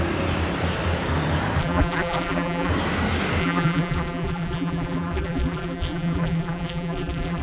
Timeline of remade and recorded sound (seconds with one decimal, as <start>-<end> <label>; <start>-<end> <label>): 0.0-1.6 recorded; 1.6-2.7 remade; 2.7-3.4 recorded; 3.4-7.4 remade